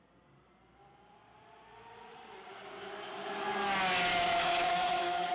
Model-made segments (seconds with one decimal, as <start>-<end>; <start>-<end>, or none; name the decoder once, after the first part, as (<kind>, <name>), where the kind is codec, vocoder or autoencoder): 4.1-5.3 (autoencoder, DAC-VAE)